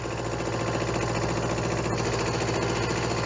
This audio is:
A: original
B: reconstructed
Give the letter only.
A